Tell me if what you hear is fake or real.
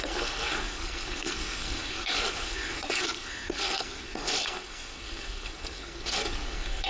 fake